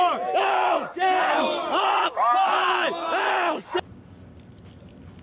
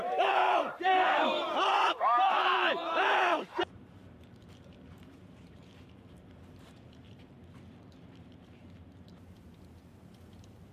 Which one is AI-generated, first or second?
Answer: second